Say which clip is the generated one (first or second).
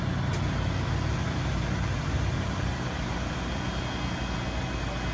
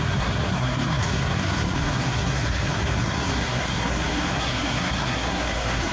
second